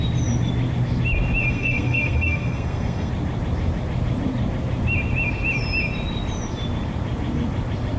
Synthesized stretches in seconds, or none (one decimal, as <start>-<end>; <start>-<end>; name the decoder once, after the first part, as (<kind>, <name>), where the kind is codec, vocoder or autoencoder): 1.4-3.1 (codec, SNAC)